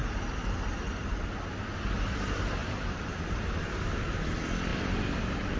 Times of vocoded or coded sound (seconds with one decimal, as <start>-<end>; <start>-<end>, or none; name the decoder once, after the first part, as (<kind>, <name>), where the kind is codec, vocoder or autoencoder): 2.6-4.1 (vocoder, BigVGAN v2); 4.7-5.6